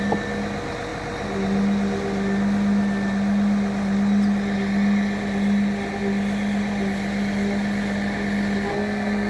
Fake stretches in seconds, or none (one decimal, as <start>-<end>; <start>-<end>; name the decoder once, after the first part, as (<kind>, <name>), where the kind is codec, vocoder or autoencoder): 8.7-9.3 (codec, SNAC)